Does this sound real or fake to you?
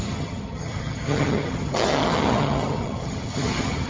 fake